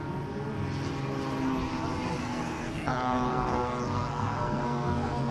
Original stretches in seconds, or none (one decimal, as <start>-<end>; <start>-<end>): 0.0-2.2